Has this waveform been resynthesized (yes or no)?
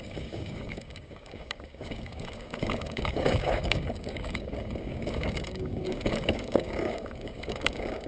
yes